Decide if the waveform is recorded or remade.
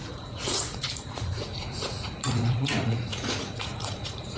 remade